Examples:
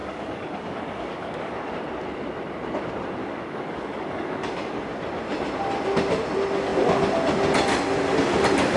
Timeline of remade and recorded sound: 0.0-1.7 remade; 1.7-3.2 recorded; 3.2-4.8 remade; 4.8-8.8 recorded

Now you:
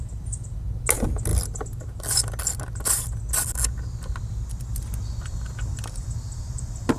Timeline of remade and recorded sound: 0.0-7.0 recorded

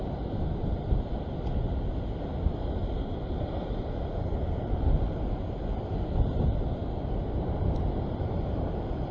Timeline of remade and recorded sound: 0.0-9.1 recorded

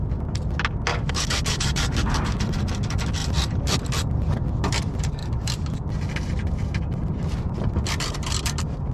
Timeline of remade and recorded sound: 0.0-0.9 recorded; 0.9-2.4 remade; 2.4-5.2 recorded; 5.2-5.9 remade; 5.9-8.9 recorded

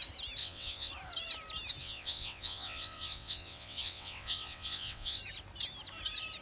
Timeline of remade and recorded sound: 0.0-0.4 recorded; 0.4-0.9 remade; 0.9-1.8 recorded; 1.8-5.2 remade; 5.2-6.4 recorded

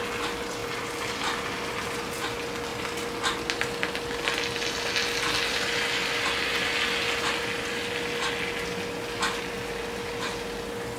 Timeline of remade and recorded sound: 0.0-11.0 recorded

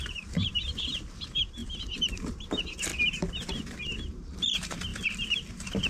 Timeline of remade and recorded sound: 0.0-2.9 remade; 2.9-3.5 recorded; 3.5-5.9 remade

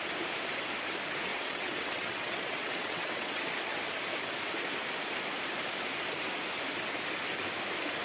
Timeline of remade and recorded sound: 0.0-1.3 recorded; 1.3-3.4 remade; 3.4-8.0 recorded